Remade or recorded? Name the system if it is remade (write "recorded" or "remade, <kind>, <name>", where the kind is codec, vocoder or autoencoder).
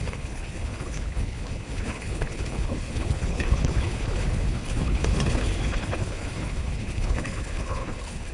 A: remade, codec, HILCodec